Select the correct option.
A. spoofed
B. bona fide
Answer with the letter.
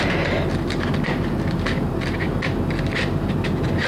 B